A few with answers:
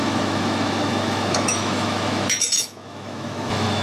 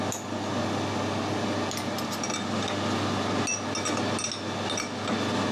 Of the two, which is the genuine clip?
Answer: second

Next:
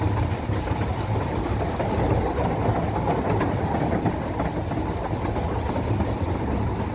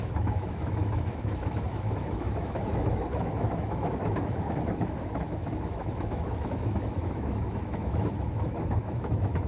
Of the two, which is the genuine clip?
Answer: first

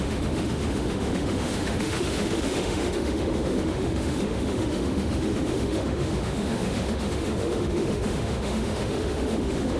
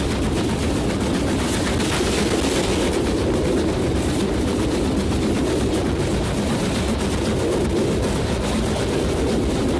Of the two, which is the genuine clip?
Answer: second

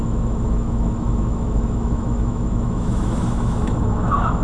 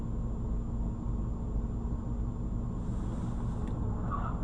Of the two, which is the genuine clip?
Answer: second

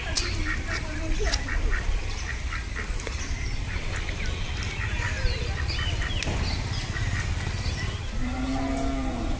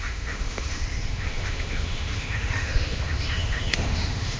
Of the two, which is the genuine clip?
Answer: first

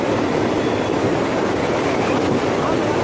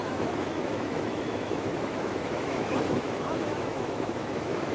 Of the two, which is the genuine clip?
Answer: first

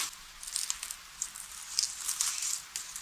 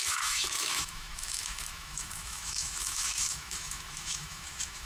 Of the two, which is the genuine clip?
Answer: first